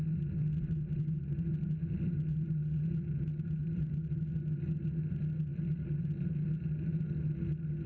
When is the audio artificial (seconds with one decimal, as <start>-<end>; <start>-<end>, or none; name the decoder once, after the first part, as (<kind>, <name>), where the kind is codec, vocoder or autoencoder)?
2.3-2.9 (vocoder, BigVGAN v2); 3.6-4.1